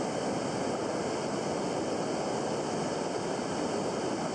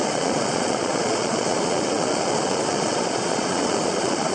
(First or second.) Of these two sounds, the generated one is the second